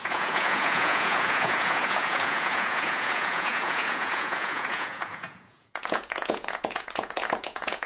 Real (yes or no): no